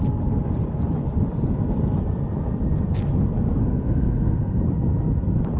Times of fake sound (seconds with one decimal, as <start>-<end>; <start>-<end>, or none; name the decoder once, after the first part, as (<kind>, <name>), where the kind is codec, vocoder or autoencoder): 3.6-4.6 (codec, SNAC)